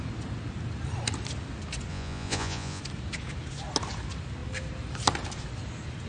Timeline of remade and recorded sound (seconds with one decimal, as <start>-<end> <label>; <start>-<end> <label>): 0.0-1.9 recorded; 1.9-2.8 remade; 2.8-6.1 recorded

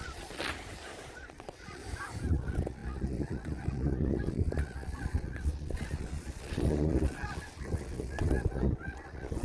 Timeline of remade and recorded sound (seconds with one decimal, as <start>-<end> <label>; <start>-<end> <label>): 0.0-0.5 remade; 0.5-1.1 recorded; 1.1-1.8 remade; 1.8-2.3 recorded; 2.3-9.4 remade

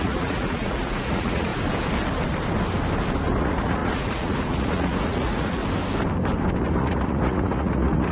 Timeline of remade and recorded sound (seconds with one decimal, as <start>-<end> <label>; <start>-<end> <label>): 0.0-1.5 remade; 1.5-3.4 recorded; 3.4-5.6 remade; 5.6-6.6 recorded; 6.6-8.1 remade